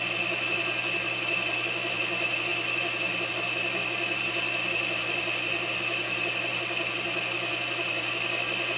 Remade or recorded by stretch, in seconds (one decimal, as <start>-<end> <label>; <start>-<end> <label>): 0.0-8.8 recorded